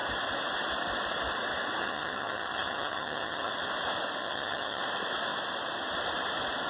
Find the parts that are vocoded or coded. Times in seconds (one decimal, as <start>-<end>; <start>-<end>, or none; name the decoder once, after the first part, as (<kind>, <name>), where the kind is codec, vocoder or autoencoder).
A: 1.8-3.5 (vocoder, HiFi-GAN); 4.2-4.8